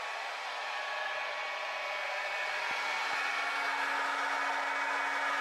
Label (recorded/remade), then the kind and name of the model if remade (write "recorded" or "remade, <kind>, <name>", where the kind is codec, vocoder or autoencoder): recorded